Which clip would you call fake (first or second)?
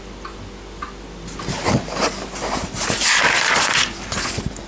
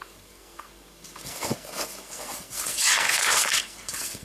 second